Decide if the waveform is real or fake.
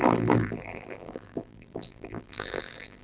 fake